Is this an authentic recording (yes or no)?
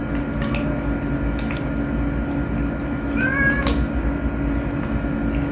yes